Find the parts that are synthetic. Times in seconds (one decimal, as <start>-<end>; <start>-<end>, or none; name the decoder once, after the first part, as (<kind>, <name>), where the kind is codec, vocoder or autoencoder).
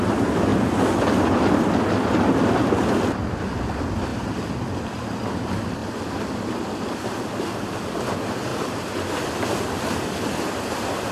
8.5-10.6 (vocoder, BigVGAN v2)